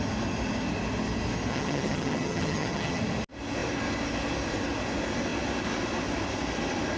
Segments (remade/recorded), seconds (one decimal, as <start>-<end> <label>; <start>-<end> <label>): 0.0-1.5 recorded; 1.5-3.0 remade; 3.0-7.0 recorded